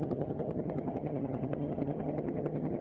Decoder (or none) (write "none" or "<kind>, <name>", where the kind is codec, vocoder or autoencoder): vocoder, HiFi-GAN